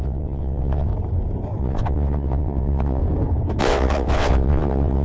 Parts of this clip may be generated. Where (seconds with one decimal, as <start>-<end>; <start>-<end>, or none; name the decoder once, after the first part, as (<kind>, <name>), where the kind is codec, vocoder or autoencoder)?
0.0-0.9 (vocoder, WaveNeXt); 1.6-3.0; 3.6-5.0